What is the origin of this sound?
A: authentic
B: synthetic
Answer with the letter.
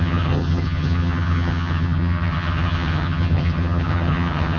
B